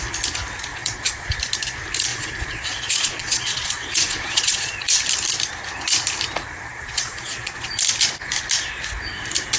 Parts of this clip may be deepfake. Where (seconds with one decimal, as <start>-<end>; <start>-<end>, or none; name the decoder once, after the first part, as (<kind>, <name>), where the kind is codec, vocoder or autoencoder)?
0.7-1.4 (vocoder, Vocos); 2.1-5.0; 6.7-7.7